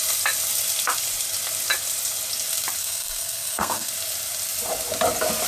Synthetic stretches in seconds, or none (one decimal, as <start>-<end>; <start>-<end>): 2.8-3.9